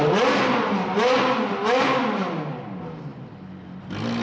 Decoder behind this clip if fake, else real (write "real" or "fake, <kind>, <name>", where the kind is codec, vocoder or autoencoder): real